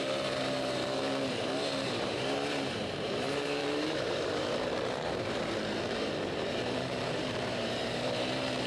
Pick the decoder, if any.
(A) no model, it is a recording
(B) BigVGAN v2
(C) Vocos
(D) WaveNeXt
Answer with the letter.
B